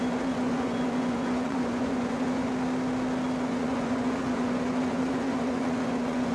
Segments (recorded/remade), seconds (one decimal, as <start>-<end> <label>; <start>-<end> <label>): 0.0-2.5 remade; 2.5-3.4 recorded; 3.4-6.3 remade